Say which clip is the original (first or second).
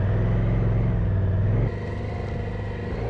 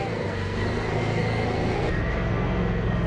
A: first